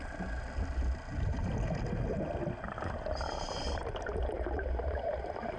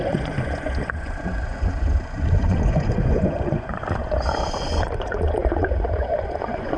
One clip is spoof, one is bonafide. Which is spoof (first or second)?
second